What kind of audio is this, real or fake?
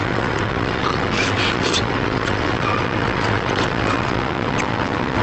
fake